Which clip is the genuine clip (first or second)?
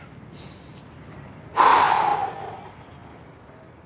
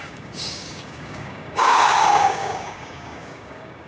first